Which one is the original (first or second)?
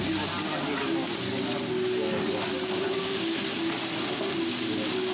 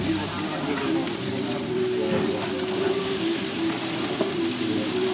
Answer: first